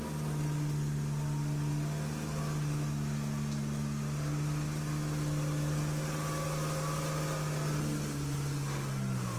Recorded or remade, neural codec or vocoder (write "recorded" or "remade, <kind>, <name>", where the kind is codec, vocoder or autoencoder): recorded